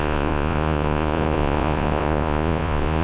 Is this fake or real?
fake